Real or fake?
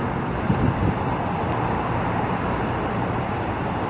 real